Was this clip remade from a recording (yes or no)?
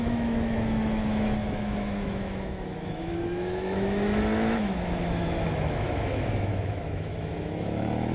yes